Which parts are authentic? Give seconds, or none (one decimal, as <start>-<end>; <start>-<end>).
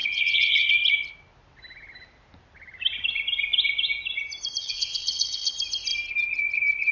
0.7-4.6; 5.5-6.9